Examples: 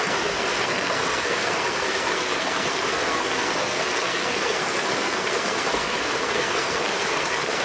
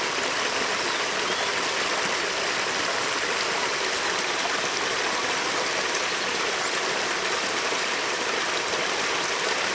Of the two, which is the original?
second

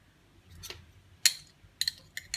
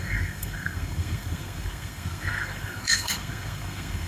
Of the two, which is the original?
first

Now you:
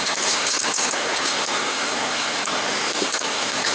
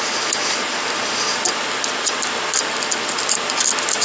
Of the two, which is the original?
second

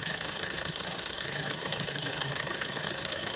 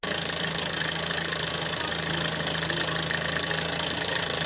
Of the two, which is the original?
second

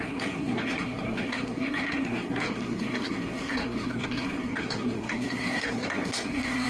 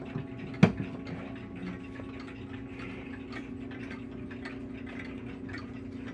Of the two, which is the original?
second